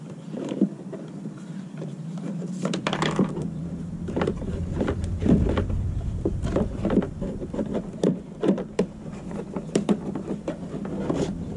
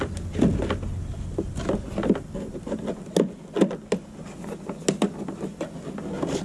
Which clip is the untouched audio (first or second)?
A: second